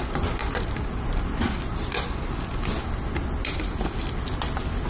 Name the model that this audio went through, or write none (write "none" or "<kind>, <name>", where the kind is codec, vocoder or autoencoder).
none